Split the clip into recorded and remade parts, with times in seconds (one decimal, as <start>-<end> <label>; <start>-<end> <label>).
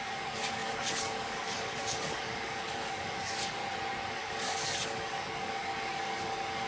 0.0-3.6 remade; 3.6-4.1 recorded; 4.1-6.7 remade